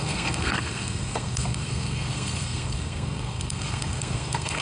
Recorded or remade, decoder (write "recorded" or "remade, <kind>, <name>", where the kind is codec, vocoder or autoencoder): remade, codec, SNAC